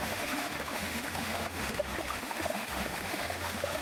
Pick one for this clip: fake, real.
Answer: fake